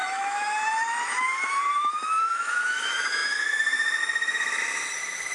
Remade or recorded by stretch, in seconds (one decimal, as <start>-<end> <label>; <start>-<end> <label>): 0.0-5.3 remade